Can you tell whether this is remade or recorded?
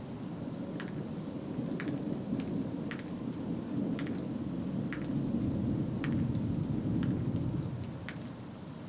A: recorded